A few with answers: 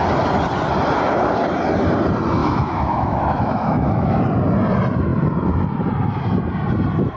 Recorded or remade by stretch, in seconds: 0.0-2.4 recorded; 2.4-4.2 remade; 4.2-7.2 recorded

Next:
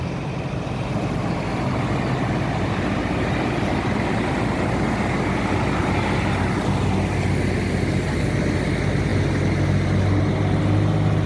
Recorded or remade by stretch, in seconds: 0.0-11.3 recorded